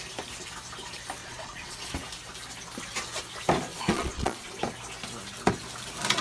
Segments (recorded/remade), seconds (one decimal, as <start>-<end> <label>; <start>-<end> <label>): 0.0-1.2 recorded; 1.2-1.9 remade; 1.9-3.7 recorded; 3.7-4.5 remade; 4.5-6.2 recorded